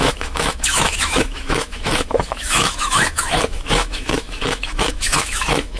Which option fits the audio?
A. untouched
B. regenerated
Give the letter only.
B